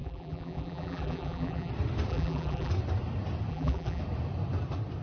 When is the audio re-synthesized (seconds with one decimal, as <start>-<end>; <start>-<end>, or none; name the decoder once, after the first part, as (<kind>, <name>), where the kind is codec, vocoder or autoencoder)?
0.0-1.7 (vocoder, BigVGAN v2); 2.1-2.7; 3.5-4.0